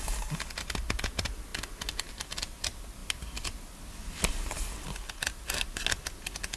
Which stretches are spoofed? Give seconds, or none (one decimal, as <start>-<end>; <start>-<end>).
none